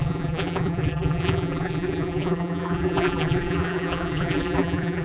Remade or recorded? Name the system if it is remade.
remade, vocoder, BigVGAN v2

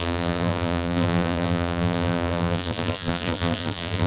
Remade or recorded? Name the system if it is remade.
remade, vocoder, BigVGAN v2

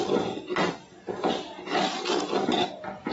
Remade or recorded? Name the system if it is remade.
recorded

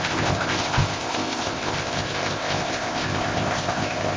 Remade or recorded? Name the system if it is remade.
remade, codec, ZipCodec